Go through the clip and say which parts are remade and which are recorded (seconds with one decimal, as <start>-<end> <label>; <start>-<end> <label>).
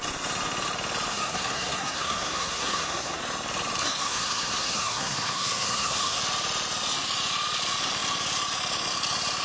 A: 0.0-1.1 recorded; 1.1-3.2 remade; 3.2-3.8 recorded; 3.8-6.2 remade; 6.2-9.4 recorded